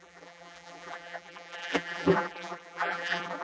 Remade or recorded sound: remade